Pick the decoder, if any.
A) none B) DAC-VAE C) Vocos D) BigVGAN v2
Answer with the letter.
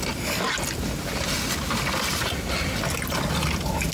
A